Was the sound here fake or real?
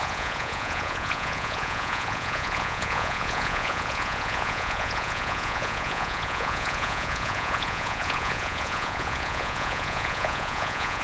fake